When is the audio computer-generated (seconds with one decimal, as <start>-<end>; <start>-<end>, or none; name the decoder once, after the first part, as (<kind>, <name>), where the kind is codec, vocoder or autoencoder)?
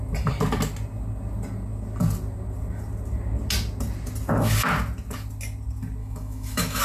6.0-6.8 (autoencoder, DAC-VAE)